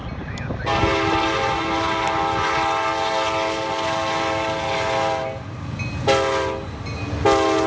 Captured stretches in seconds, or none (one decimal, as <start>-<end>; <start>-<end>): 0.0-7.7